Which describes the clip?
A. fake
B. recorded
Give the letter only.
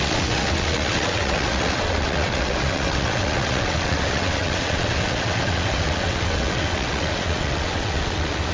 A